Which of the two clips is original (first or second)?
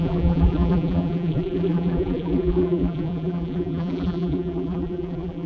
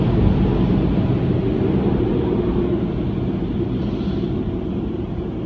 second